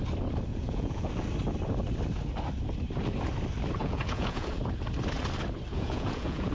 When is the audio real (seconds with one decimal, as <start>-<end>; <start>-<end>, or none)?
0.0-0.5; 1.1-3.8; 4.6-5.7